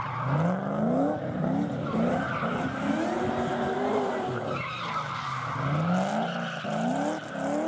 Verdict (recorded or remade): recorded